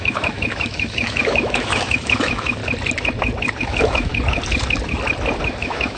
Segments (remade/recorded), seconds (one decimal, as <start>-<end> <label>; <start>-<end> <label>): 0.0-2.6 remade; 2.6-3.6 recorded; 3.6-4.1 remade; 4.1-5.6 recorded; 5.6-6.0 remade